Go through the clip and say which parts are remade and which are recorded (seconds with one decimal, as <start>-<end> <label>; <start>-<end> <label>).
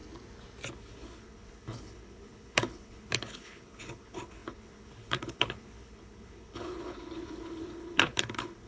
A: 0.0-0.7 recorded; 0.7-8.7 remade